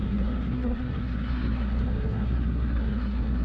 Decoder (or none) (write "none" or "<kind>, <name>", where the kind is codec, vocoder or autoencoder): codec, SNAC